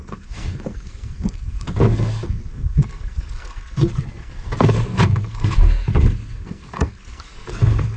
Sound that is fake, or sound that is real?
fake